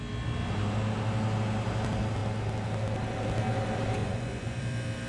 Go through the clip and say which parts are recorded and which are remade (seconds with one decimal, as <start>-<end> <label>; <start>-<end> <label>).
0.0-4.0 recorded; 4.0-4.6 remade; 4.6-5.1 recorded